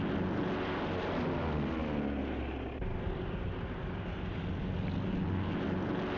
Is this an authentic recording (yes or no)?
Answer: yes